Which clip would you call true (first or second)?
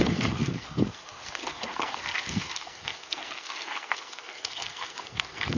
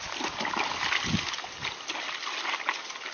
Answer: second